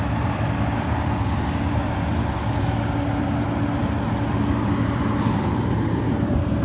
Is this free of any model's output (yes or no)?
no